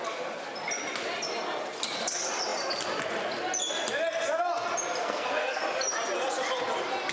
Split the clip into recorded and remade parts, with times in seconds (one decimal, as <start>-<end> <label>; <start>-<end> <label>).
0.0-5.0 recorded; 5.0-5.6 remade; 5.6-7.1 recorded